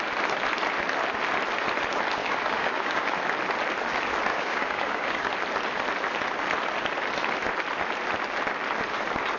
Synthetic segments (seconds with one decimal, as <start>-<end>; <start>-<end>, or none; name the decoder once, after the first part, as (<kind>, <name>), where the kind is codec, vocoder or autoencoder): 2.2-3.1 (codec, DAC); 4.3-5.3